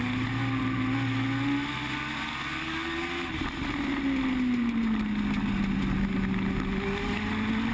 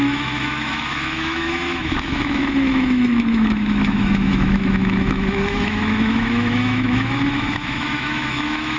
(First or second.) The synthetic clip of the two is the second